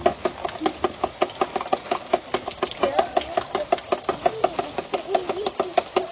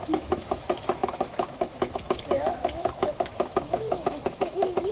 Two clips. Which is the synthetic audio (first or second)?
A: second